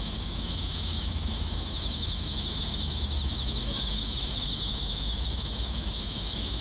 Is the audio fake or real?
fake